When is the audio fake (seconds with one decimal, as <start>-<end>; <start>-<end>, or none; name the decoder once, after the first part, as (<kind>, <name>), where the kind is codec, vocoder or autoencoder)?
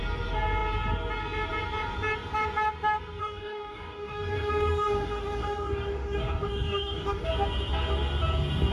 3.2-7.3 (codec, DAC)